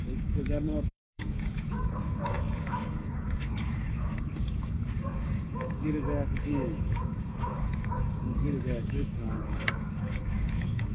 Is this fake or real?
fake